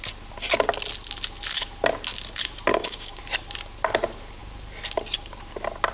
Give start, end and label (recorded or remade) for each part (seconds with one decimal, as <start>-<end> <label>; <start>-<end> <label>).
0.0-2.7 recorded; 2.7-3.2 remade; 3.2-5.9 recorded